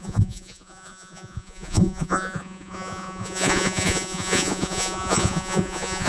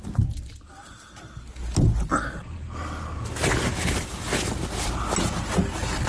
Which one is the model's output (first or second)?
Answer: first